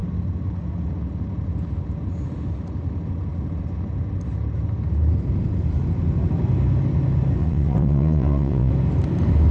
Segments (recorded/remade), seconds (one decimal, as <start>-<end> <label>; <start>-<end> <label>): 0.0-7.4 recorded; 7.4-8.7 remade; 8.7-9.5 recorded